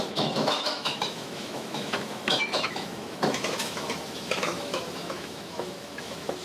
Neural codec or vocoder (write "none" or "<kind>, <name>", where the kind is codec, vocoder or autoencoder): autoencoder, DAC-VAE